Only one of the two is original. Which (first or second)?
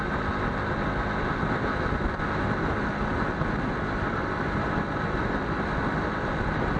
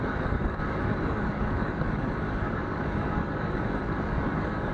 first